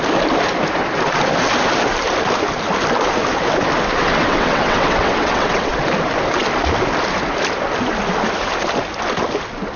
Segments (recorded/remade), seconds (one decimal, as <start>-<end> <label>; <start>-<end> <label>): 0.0-4.0 recorded; 4.0-5.7 remade; 5.7-9.8 recorded